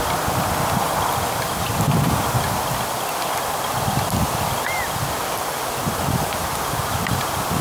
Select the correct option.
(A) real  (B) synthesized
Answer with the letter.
A